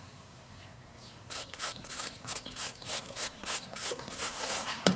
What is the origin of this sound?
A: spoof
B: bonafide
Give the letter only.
A